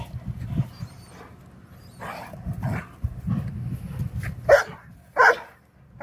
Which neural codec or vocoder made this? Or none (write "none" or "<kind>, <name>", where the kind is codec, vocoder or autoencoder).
none